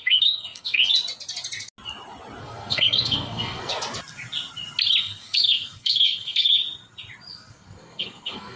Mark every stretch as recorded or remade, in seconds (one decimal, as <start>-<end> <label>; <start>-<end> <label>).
0.0-0.9 remade; 0.9-2.4 recorded; 2.4-3.7 remade; 3.7-5.0 recorded; 5.0-6.6 remade; 6.6-7.3 recorded; 7.3-8.6 remade